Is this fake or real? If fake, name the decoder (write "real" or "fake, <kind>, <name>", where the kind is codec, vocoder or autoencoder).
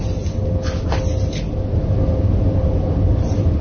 real